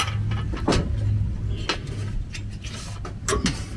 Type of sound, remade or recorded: recorded